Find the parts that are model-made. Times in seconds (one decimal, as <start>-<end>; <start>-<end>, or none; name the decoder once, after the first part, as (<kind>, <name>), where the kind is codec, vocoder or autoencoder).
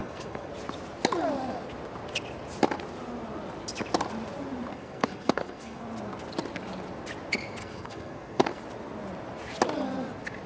0.0-0.5 (codec, SNAC); 4.7-5.8; 7.6-8.6